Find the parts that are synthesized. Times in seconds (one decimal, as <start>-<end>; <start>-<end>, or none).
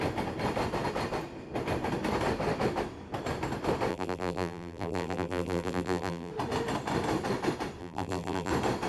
3.9-6.3; 7.8-8.5